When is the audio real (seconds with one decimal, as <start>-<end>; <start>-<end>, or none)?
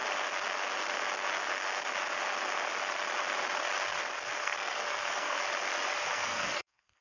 0.0-4.4; 5.4-6.1